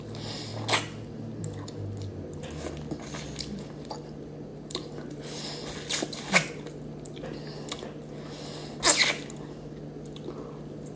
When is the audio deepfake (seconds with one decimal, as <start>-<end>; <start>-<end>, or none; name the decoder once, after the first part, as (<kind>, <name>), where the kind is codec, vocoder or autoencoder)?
4.5-5.2 (vocoder, BigVGAN v2)